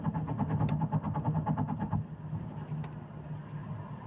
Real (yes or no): yes